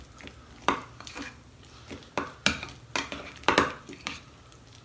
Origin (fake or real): real